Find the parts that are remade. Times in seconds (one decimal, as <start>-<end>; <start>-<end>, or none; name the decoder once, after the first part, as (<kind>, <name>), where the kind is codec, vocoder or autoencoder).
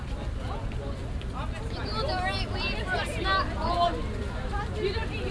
none